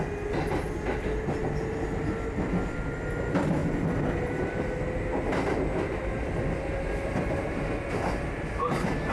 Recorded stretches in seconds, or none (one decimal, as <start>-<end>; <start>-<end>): 0.0-9.1